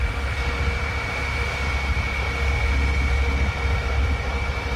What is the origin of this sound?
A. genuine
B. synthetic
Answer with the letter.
A